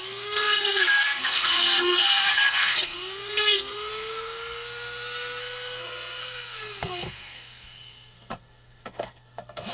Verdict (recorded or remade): remade